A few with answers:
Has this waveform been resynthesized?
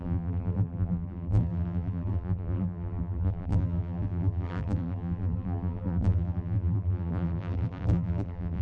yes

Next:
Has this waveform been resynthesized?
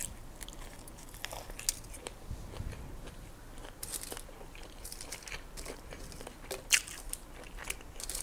no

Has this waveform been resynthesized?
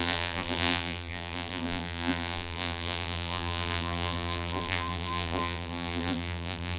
yes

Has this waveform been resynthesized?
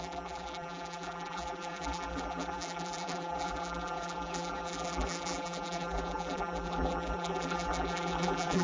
yes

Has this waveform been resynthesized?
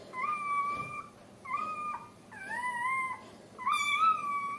no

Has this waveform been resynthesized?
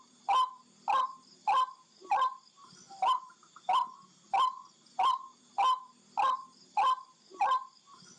no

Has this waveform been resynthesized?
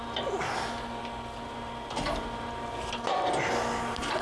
no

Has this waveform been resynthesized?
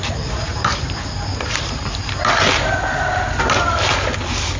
no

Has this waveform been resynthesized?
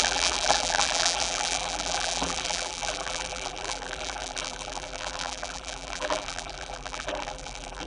yes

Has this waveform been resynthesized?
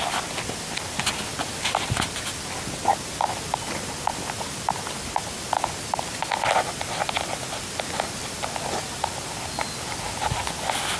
no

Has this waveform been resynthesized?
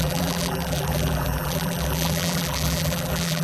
yes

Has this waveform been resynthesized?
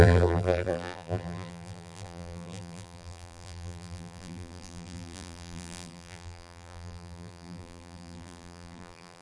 yes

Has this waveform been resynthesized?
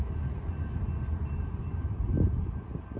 yes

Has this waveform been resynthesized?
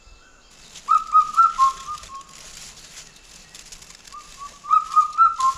no